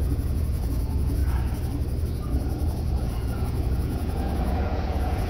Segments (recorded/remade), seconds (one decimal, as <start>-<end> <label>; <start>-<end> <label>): 0.0-1.2 remade; 1.2-3.0 recorded; 3.0-5.3 remade